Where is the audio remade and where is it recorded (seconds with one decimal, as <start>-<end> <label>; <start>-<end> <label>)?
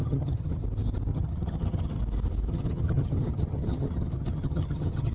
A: 0.0-0.6 remade; 0.6-1.1 recorded; 1.1-2.0 remade; 2.0-2.5 recorded; 2.5-5.1 remade